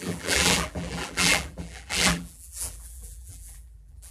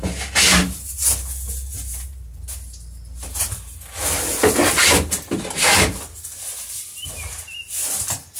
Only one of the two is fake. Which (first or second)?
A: first